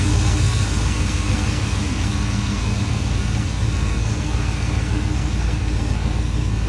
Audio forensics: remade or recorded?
remade